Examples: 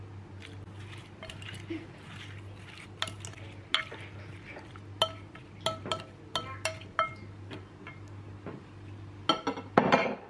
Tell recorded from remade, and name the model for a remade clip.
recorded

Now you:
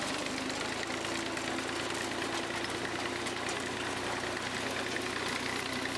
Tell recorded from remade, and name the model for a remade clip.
recorded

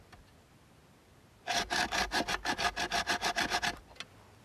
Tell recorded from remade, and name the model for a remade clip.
recorded